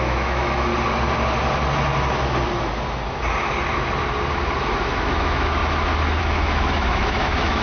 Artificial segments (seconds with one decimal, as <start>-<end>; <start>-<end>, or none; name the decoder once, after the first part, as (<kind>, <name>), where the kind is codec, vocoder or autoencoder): 0.0-0.7 (autoencoder, DAC-VAE); 4.8-5.6; 6.2-7.6